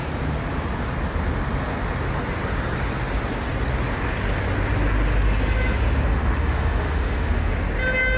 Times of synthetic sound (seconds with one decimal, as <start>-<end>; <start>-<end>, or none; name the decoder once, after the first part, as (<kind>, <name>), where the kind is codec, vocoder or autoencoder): 6.1-7.5 (autoencoder, DAC-VAE)